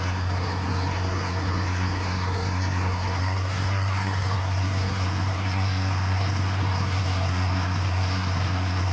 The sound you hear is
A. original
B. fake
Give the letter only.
B